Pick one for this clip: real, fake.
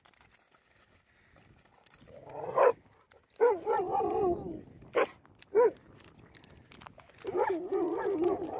real